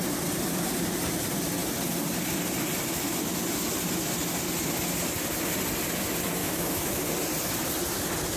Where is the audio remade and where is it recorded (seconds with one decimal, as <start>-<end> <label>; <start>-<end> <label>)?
0.0-6.4 recorded; 6.4-7.0 remade; 7.0-8.4 recorded